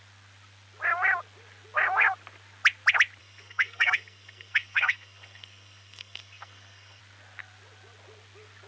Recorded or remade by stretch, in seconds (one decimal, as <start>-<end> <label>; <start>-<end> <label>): 0.0-3.2 recorded; 3.2-7.0 remade; 7.0-8.7 recorded